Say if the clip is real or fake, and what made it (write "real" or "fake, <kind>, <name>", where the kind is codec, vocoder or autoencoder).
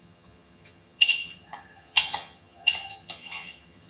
fake, vocoder, HiFi-GAN